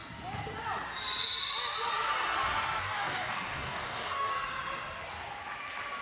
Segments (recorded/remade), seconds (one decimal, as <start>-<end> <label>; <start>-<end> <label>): 0.0-2.8 recorded; 2.8-4.3 remade; 4.3-6.0 recorded